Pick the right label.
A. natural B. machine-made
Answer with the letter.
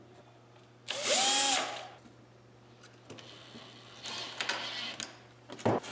A